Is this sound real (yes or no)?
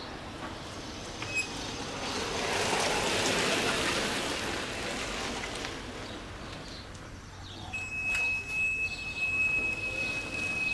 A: yes